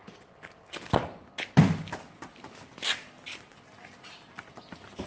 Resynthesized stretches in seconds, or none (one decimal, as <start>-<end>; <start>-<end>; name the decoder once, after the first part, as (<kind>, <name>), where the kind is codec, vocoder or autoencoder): none